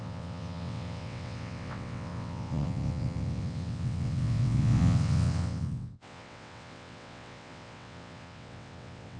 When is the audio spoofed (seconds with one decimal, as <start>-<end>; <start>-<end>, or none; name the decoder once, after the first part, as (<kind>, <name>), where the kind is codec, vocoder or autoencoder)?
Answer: 0.0-9.2 (vocoder, WaveNeXt)